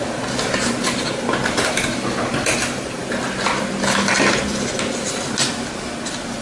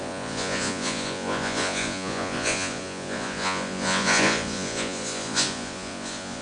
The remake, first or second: second